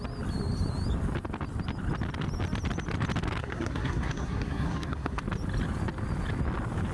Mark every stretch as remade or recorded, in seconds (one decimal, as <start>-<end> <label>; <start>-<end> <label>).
0.0-3.4 recorded; 3.4-5.2 remade; 5.2-6.9 recorded